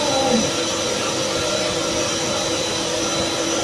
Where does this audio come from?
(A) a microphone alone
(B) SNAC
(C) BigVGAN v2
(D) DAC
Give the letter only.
A